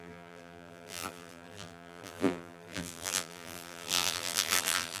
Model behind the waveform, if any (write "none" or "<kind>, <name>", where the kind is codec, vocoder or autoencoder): vocoder, BigVGAN v2